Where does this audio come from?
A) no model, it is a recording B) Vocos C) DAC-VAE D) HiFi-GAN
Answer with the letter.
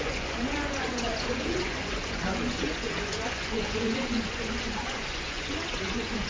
B